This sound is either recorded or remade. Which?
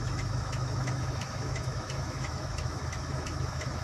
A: remade